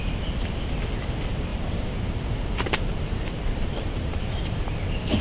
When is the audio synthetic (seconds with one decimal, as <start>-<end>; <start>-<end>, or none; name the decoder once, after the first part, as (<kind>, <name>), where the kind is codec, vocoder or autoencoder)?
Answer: 1.5-4.2 (vocoder, BigVGAN v2)